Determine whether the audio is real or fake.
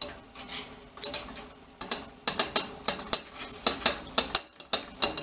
real